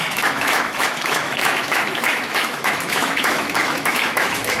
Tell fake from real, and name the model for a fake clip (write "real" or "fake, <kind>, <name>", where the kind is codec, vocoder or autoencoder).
fake, autoencoder, DAC-VAE